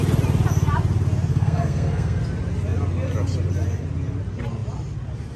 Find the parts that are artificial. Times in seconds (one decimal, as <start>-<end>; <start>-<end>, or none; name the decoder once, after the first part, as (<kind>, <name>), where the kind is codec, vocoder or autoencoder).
1.3-2.2 (codec, SNAC)